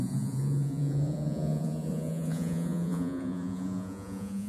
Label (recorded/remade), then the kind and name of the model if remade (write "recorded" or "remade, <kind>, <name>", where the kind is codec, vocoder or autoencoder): remade, vocoder, Vocos